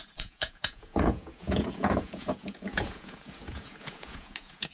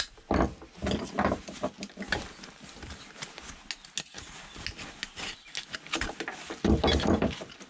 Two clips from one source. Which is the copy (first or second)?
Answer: first